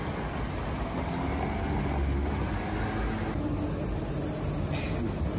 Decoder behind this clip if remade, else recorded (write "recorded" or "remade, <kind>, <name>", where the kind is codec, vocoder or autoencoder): recorded